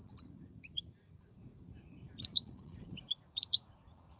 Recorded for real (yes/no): no